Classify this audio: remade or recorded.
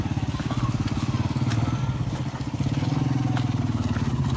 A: recorded